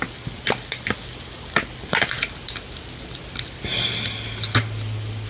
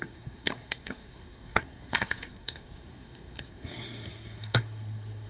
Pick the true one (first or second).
first